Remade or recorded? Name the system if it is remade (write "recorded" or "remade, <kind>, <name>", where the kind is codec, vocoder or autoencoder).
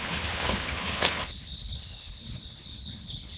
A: remade, codec, HILCodec